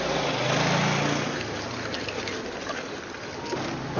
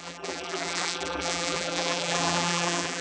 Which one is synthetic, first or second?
second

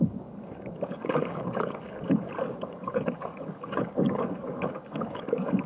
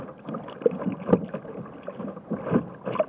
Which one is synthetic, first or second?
first